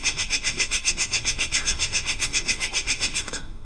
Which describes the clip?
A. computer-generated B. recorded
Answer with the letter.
A